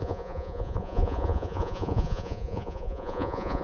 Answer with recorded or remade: remade